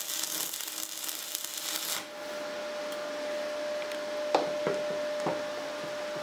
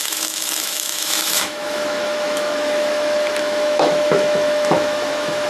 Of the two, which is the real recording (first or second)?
first